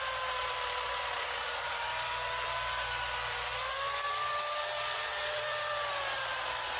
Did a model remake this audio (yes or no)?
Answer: yes